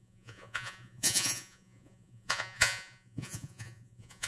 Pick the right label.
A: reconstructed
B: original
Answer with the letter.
A